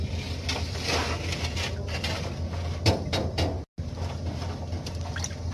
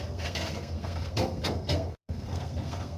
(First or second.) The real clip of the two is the first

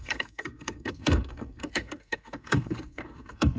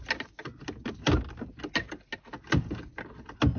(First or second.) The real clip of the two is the second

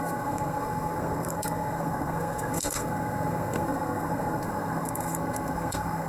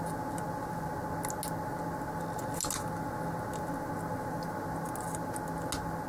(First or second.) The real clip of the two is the second